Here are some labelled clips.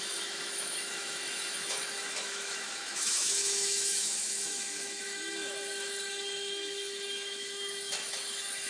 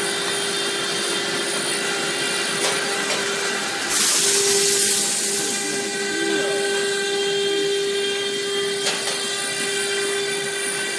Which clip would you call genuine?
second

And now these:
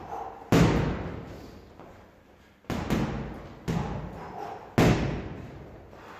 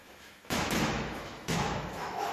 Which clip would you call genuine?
first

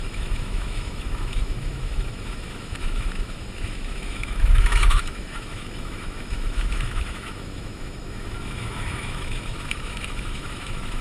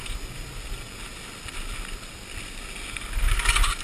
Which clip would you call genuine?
second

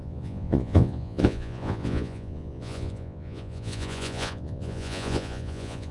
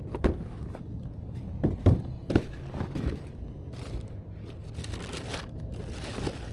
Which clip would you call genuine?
second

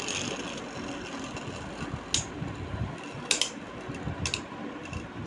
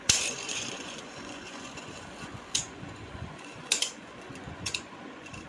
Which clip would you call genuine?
first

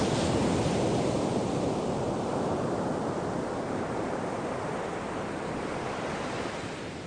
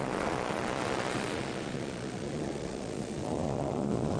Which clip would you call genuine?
first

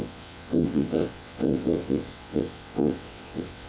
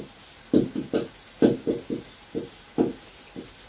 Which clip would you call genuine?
second